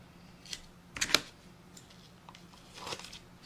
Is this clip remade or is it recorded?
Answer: recorded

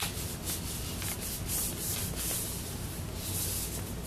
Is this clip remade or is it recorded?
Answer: recorded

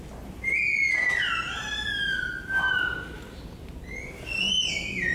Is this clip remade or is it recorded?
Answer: recorded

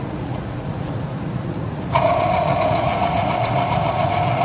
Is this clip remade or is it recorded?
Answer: remade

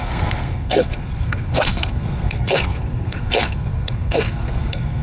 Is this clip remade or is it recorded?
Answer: remade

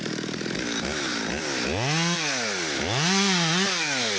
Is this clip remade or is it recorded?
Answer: recorded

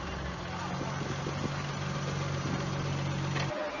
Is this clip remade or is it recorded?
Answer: recorded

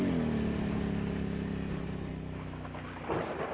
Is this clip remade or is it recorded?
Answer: recorded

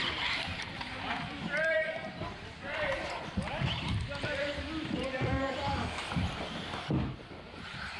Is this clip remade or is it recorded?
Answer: remade